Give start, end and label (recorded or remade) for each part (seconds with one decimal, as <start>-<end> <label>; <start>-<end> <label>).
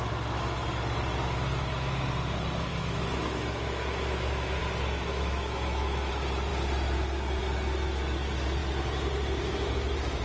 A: 0.0-2.7 recorded; 2.7-4.6 remade; 4.6-5.1 recorded; 5.1-6.1 remade; 6.1-10.2 recorded